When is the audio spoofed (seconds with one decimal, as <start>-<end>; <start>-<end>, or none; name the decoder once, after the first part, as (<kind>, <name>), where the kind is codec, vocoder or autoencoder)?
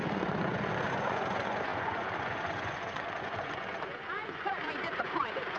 0.0-5.6 (vocoder, Vocos)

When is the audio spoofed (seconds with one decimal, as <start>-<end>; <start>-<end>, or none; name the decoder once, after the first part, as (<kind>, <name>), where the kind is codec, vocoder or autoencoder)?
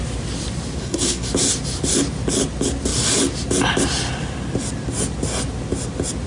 0.8-1.3 (codec, SNAC)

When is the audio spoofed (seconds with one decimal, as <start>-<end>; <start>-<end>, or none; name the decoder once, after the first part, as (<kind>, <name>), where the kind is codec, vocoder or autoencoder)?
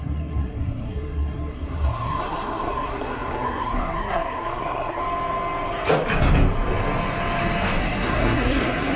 0.0-5.0 (codec, SNAC); 7.8-9.0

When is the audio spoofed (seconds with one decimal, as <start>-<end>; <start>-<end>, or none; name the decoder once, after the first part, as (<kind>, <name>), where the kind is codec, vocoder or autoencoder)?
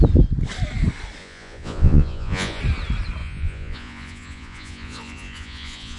1.2-2.6 (vocoder, Vocos); 3.2-6.0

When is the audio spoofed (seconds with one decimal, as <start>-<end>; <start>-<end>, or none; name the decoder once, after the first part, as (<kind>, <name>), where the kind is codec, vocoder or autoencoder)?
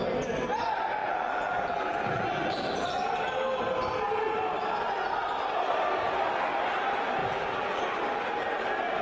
1.0-3.1 (vocoder, BigVGAN v2); 7.2-7.8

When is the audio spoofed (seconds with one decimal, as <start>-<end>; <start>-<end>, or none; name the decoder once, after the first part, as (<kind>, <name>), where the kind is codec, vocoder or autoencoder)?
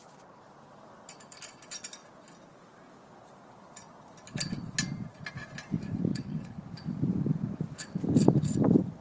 6.1-6.6 (vocoder, WaveNeXt)